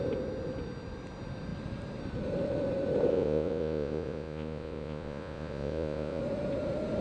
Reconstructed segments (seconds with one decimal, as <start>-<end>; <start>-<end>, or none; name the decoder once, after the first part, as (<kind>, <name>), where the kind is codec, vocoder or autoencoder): 3.1-6.2 (vocoder, Vocos)